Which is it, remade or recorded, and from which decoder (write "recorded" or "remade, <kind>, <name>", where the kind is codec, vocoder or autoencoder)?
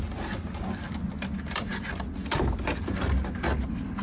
recorded